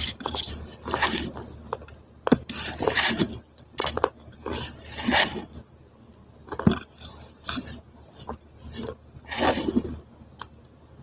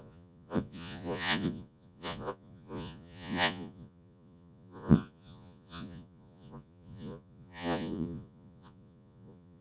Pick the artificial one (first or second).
second